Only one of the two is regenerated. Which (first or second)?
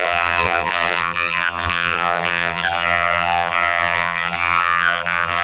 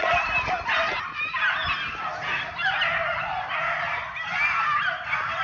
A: first